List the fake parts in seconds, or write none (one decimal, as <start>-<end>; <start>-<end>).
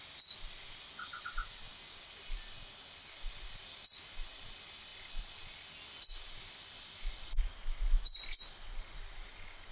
none